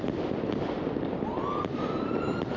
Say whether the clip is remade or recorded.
recorded